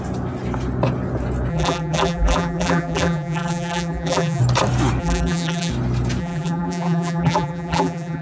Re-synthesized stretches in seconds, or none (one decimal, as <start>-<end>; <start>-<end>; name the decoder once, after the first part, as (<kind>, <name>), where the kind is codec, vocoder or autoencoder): 1.5-4.4 (vocoder, BigVGAN v2); 5.0-5.7; 6.2-8.2